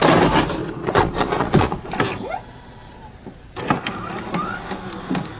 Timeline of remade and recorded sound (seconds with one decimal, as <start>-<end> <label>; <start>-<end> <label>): 0.0-0.6 recorded; 0.6-2.0 remade; 2.0-5.4 recorded